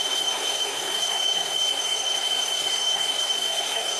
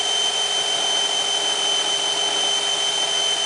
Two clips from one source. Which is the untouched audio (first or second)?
second